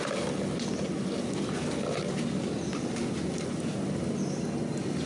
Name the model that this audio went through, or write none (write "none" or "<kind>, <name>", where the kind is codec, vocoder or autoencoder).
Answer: none